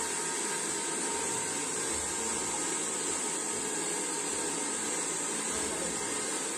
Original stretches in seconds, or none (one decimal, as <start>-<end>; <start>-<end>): 0.0-6.6